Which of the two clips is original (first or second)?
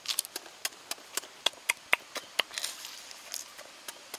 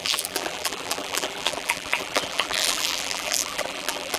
first